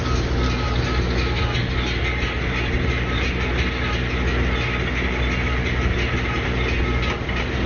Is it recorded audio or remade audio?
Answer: recorded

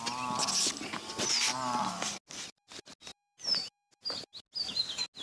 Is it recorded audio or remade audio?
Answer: recorded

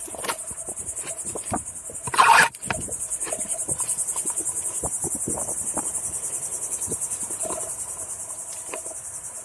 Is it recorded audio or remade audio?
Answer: remade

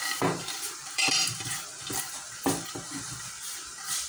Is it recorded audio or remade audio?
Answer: remade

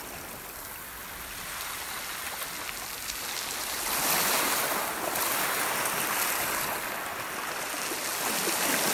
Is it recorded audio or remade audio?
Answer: recorded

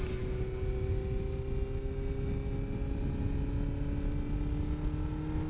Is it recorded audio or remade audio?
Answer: recorded